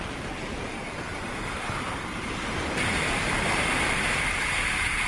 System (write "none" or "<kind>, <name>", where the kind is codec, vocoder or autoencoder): vocoder, BigVGAN v2